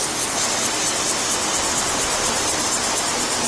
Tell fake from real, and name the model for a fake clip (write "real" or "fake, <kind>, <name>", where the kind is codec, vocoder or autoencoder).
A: real